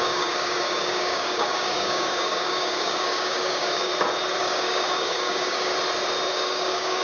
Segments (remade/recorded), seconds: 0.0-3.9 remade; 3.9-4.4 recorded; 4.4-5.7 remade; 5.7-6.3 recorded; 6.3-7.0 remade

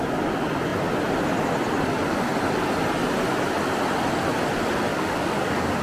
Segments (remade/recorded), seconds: 0.0-4.9 recorded; 4.9-5.8 remade